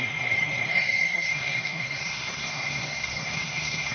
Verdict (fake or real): fake